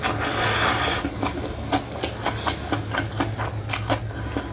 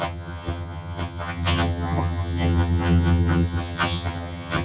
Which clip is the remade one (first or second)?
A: second